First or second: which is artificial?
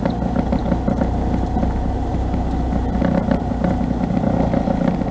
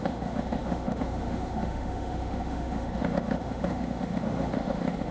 second